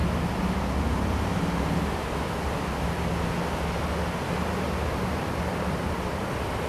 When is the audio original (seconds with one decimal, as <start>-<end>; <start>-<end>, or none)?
0.0-6.7